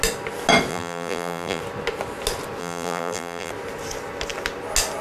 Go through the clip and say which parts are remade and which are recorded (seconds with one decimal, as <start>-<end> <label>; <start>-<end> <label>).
0.0-0.7 recorded; 0.7-1.6 remade; 1.6-2.6 recorded; 2.6-3.5 remade; 3.5-5.0 recorded